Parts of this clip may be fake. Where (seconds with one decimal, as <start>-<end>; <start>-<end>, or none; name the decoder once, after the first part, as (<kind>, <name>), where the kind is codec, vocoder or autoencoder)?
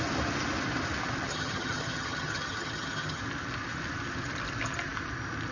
1.3-3.2 (vocoder, HiFi-GAN)